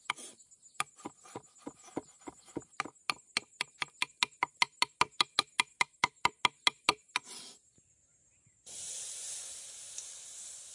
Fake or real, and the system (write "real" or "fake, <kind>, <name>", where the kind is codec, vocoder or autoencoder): real